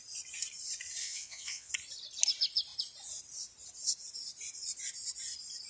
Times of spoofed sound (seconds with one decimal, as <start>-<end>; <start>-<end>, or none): 1.0-1.7